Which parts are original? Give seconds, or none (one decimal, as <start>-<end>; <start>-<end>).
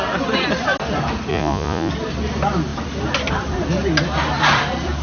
0.0-1.3; 1.9-5.0